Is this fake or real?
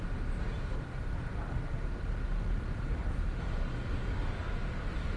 real